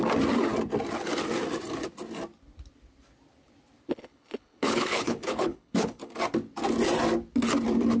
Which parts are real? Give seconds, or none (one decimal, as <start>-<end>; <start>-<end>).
0.0-3.9; 6.1-8.0